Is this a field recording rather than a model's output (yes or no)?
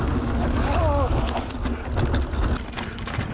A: yes